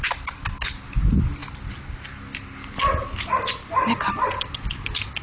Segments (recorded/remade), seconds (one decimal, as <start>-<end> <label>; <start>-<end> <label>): 0.0-5.2 recorded